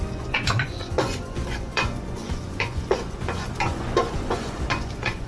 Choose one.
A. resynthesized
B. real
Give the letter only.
A